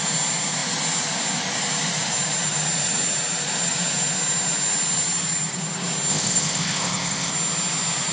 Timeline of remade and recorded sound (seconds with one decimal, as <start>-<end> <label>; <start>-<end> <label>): 0.0-6.1 recorded; 6.1-7.3 remade; 7.3-8.1 recorded